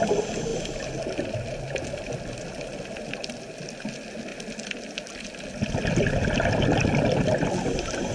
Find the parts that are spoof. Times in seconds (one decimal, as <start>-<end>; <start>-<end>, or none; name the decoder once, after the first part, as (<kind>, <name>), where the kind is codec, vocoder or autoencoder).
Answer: none